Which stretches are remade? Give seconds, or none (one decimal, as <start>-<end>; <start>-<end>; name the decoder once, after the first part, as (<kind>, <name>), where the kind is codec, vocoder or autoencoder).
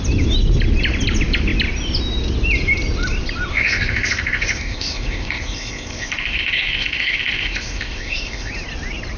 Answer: 3.5-8.5 (codec, ZipCodec)